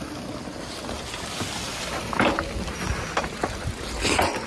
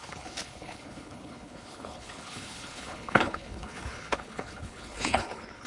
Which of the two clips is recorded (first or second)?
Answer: first